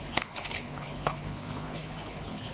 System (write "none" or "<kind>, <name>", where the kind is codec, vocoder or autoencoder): codec, HILCodec